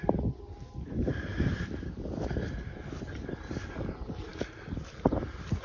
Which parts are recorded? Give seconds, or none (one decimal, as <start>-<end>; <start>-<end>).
0.0-5.6